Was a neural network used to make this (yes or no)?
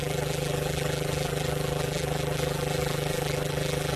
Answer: yes